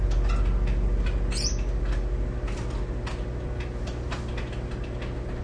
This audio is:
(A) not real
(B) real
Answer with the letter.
B